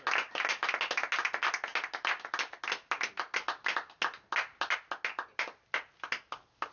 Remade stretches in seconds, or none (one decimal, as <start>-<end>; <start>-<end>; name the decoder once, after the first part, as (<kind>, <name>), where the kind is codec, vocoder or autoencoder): none